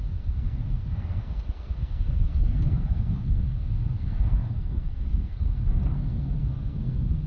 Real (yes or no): no